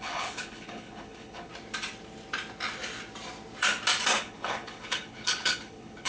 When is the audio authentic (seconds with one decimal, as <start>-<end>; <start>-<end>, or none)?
1.5-4.2